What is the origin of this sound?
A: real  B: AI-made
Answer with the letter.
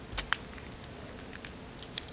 A